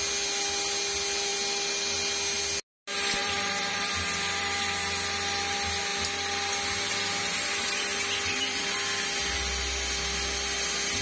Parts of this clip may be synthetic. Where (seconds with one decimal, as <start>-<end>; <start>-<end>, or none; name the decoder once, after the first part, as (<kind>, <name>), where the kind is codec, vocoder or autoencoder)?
3.2-3.9 (vocoder, BigVGAN v2)